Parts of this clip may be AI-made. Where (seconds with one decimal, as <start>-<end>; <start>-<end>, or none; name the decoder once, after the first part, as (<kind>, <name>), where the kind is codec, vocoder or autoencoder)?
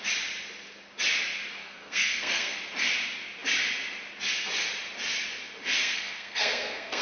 1.6-2.6 (codec, SNAC); 5.8-7.0